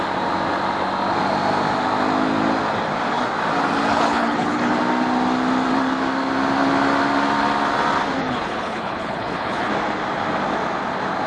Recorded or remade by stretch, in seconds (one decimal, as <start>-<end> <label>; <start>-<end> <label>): 0.0-3.9 recorded; 3.9-4.7 remade; 4.7-8.2 recorded; 8.2-9.7 remade; 9.7-11.3 recorded